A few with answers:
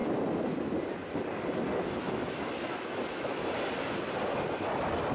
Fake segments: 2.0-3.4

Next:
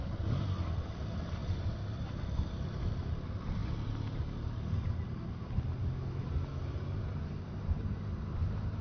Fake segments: 5.8-6.3

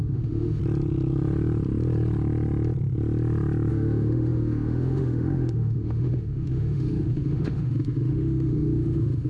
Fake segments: 0.0-0.6; 3.7-9.3

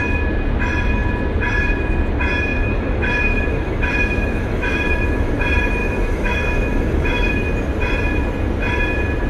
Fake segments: 2.5-5.3; 5.8-7.3

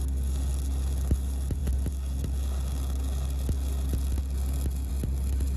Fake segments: none